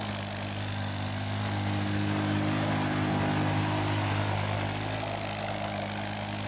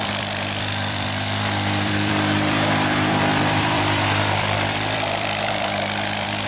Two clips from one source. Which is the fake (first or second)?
second